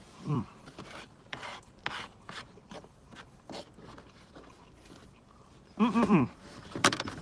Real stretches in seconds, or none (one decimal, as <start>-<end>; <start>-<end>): 1.8-2.3; 2.9-5.4